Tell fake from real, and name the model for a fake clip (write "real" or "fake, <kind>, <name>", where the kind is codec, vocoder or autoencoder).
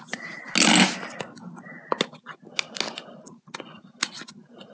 real